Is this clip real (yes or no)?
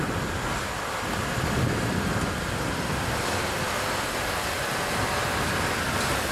yes